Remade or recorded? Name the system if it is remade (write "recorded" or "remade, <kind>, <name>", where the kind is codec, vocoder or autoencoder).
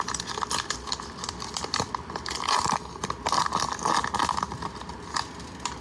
recorded